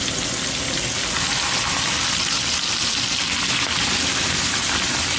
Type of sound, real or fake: real